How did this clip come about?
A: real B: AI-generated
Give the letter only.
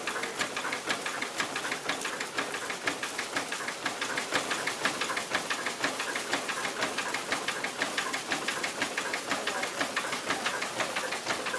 A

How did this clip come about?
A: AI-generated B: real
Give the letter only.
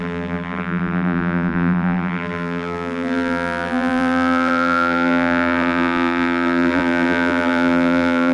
A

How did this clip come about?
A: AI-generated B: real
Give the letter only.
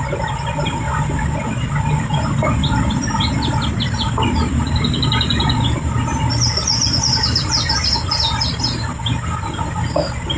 B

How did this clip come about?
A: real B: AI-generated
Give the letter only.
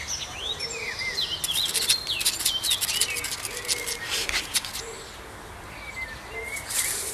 A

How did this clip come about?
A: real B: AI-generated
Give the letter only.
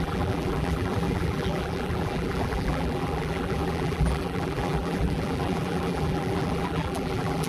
B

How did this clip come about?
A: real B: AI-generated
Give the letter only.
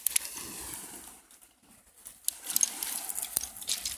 A